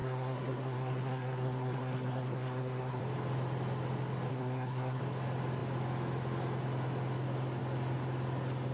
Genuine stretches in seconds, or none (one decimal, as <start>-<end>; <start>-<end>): 3.0-4.3; 5.0-8.7